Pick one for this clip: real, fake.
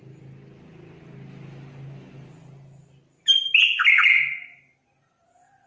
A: real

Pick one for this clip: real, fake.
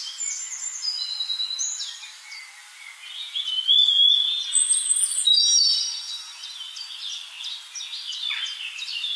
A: real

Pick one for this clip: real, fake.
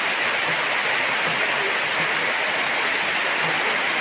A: real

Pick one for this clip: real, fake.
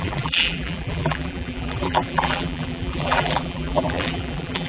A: fake